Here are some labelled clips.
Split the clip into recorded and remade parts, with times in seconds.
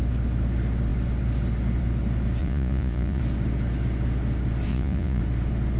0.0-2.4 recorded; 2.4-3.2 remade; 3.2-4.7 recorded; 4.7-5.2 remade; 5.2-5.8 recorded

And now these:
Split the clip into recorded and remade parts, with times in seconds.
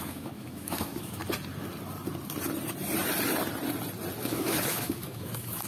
0.0-1.2 remade; 1.2-4.2 recorded; 4.2-5.7 remade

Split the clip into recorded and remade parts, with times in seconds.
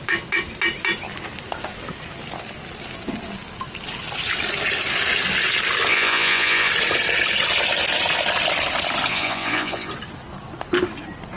0.0-5.9 recorded; 5.9-6.7 remade; 6.7-9.1 recorded; 9.1-9.9 remade; 9.9-11.4 recorded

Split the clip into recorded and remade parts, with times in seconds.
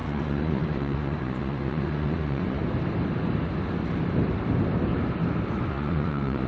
0.0-2.6 remade; 2.6-5.7 recorded; 5.7-6.5 remade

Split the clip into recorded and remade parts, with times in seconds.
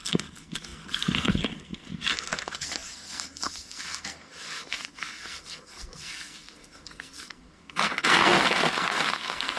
0.0-9.6 remade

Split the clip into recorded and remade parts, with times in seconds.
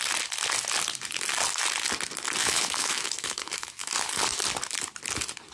0.0-2.4 recorded; 2.4-3.9 remade; 3.9-5.5 recorded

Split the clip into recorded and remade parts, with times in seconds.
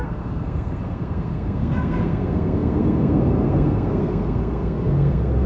0.0-5.5 remade